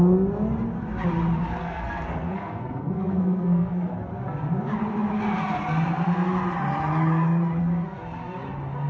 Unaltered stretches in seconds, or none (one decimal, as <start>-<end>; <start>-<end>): 0.0-1.6; 3.9-8.9